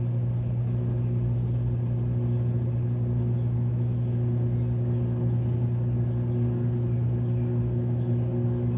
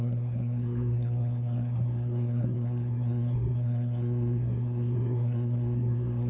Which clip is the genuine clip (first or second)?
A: first